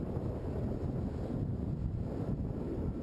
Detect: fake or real real